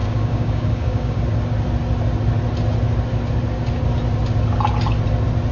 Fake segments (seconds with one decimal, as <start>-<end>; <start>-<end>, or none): 0.0-1.2